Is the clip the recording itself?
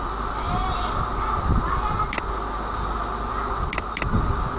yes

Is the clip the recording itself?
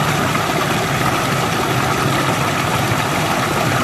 yes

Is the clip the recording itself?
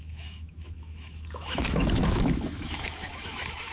no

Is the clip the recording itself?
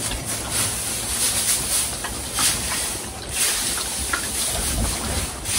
yes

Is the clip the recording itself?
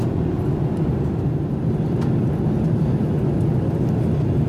yes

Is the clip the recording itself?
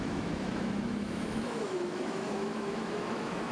no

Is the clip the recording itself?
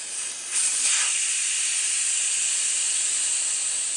yes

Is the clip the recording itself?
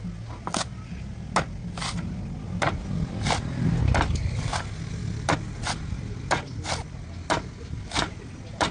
yes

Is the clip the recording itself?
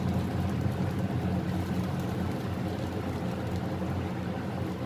yes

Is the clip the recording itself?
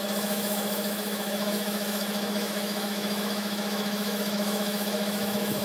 no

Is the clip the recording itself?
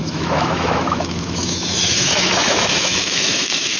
no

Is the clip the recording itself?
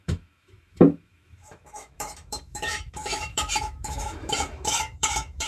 no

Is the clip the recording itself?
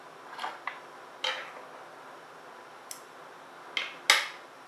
yes